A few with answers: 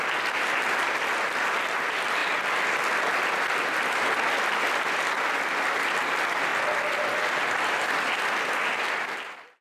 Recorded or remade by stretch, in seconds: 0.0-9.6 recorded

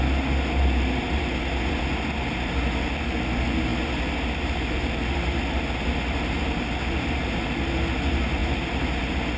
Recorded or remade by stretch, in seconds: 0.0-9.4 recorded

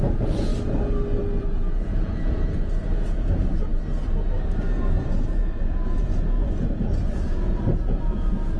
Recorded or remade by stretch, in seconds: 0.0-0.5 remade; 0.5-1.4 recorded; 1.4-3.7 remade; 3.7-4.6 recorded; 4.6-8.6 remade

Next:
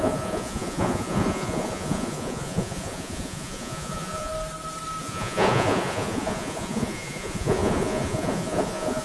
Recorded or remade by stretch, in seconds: 0.0-4.3 remade; 4.3-5.0 recorded; 5.0-9.0 remade

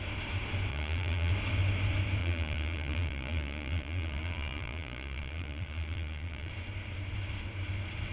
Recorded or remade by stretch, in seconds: 0.0-0.7 recorded; 0.7-1.3 remade; 1.3-2.2 recorded; 2.2-6.5 remade; 6.5-8.1 recorded

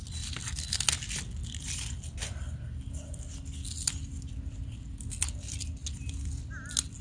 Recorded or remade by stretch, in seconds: 0.0-7.0 recorded

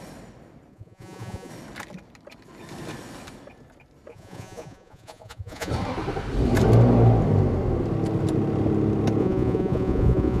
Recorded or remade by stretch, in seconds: 0.0-0.7 recorded; 0.7-1.5 remade; 1.5-4.1 recorded; 4.1-5.7 remade; 5.7-9.2 recorded; 9.2-10.4 remade

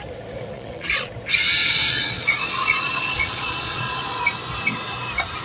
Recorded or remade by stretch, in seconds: 0.0-0.5 recorded; 0.5-1.1 remade; 1.1-1.6 recorded; 1.6-4.2 remade; 4.2-5.4 recorded